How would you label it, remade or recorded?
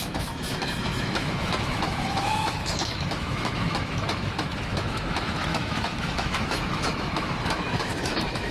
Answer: remade